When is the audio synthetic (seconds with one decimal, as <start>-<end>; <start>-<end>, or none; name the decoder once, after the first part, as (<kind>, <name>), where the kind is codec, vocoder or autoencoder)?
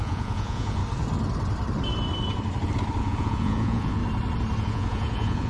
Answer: 0.0-0.8 (vocoder, Vocos); 3.0-4.0; 4.6-5.5